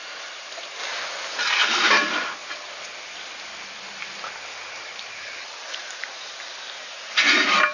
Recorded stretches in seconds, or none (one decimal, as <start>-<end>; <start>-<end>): 0.8-1.4; 2.4-4.8; 6.0-6.9